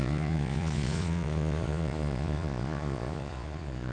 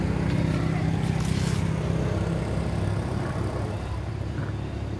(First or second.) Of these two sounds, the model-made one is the first